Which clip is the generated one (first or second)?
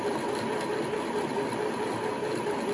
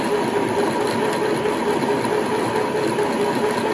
first